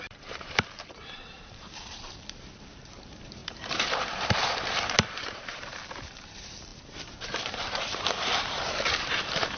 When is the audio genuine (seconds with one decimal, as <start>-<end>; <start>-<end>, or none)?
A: none